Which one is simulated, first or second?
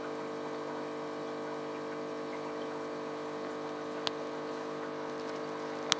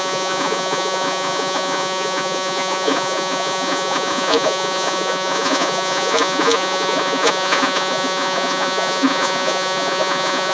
second